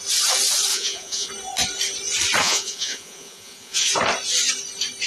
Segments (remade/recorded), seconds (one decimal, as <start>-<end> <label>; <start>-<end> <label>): 0.0-0.7 recorded; 0.7-1.3 remade; 1.3-2.4 recorded; 2.4-3.9 remade; 3.9-5.1 recorded